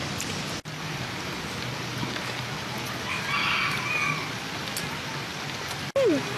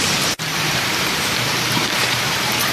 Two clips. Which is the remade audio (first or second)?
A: second